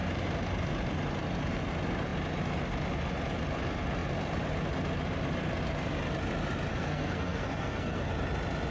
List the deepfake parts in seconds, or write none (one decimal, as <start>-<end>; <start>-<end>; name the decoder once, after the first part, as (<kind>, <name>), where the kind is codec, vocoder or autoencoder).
6.7-8.1 (codec, SNAC)